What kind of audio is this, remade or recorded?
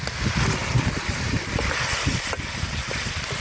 recorded